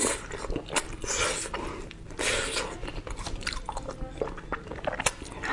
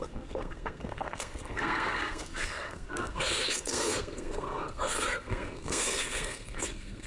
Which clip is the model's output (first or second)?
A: second